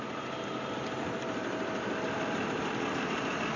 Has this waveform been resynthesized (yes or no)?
yes